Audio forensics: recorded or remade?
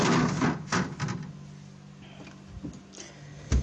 recorded